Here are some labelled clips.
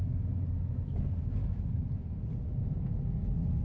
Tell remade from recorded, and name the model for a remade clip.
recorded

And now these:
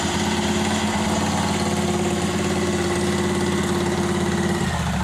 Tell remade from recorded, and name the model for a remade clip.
recorded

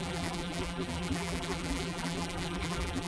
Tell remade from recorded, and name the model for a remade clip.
remade, vocoder, BigVGAN v2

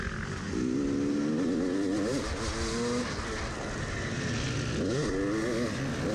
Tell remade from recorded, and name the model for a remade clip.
recorded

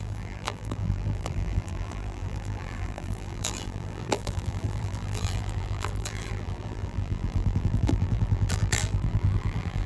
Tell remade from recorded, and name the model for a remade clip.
remade, vocoder, BigVGAN v2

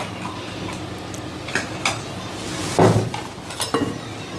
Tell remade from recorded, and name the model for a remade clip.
recorded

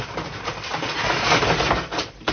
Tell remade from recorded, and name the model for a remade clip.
remade, vocoder, BigVGAN v2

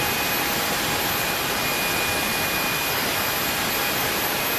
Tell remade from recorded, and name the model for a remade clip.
recorded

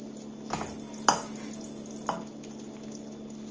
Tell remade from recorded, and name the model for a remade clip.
recorded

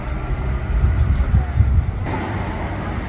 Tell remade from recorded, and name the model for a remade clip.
recorded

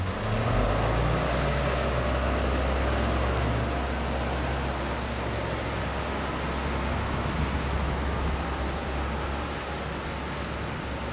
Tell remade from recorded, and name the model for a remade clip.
recorded